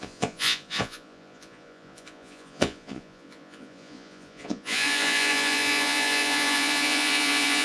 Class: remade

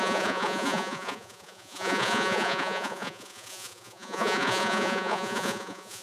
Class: remade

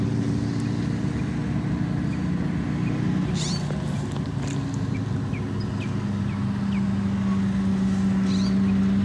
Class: recorded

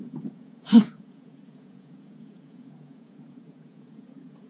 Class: remade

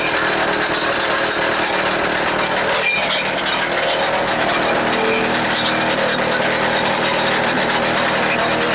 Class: recorded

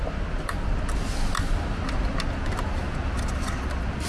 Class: recorded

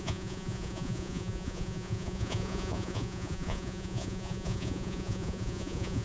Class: remade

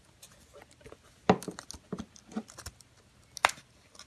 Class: recorded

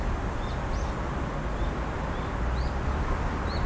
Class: recorded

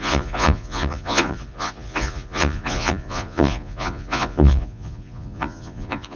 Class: remade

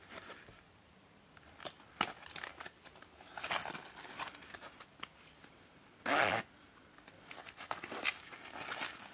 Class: recorded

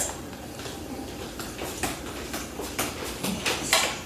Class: recorded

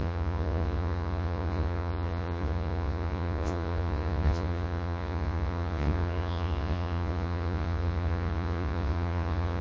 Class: remade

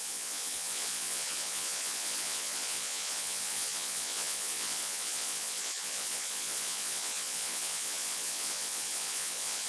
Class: remade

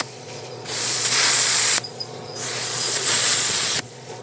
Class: remade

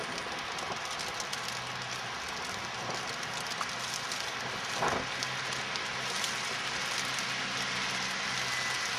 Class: recorded